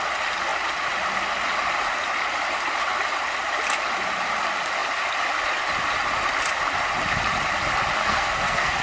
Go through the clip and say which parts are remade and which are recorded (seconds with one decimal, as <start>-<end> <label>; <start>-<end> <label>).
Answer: 0.0-8.0 recorded; 8.0-8.8 remade